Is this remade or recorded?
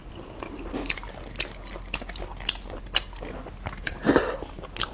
recorded